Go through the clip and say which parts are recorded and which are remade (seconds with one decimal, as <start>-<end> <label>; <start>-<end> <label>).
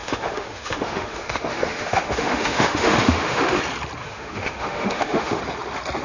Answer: 0.0-3.6 remade; 3.6-4.0 recorded; 4.0-5.4 remade; 5.4-6.0 recorded